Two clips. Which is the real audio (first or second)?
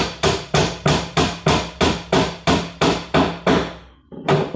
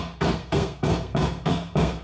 first